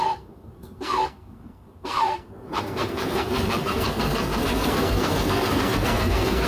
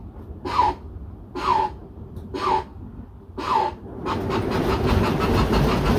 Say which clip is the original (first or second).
second